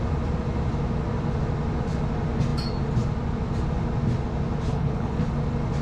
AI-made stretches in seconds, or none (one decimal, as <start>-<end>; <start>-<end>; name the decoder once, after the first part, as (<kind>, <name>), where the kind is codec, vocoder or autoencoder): 4.7-5.3 (codec, HILCodec)